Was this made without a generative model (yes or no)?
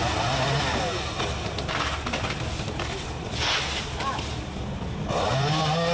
yes